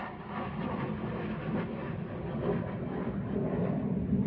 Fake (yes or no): yes